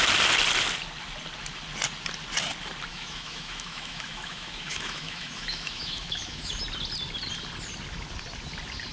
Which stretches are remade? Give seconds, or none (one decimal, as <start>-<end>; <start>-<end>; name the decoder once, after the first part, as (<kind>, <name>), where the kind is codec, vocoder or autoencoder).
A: 2.9-6.6 (autoencoder, DAC-VAE)